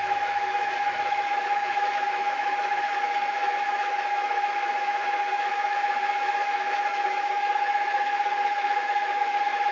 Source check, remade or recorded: remade